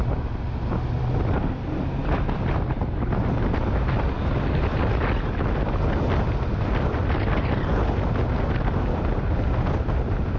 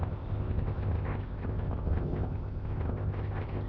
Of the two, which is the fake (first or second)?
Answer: second